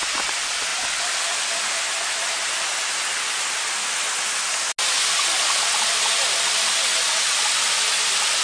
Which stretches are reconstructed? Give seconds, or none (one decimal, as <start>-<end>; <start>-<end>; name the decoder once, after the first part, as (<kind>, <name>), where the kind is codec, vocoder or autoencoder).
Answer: none